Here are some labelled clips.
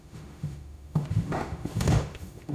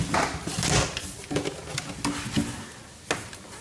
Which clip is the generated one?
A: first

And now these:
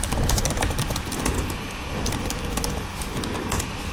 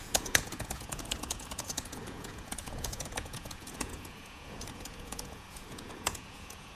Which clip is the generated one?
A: second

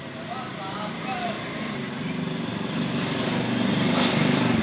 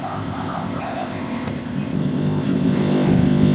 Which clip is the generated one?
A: second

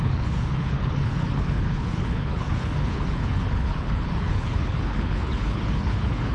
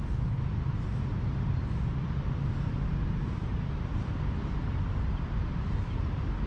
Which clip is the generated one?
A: first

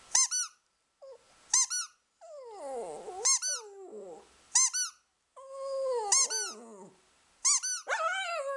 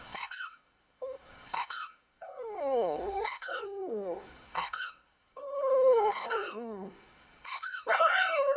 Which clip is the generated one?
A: second